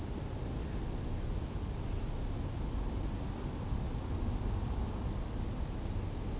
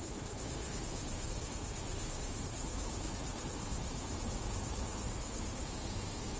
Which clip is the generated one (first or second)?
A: second